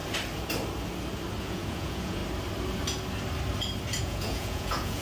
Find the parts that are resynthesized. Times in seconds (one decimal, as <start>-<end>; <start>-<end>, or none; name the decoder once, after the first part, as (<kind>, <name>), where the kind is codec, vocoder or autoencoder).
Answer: 1.4-2.2 (vocoder, Vocos); 4.0-5.0